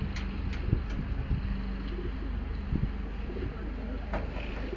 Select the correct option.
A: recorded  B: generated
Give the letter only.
A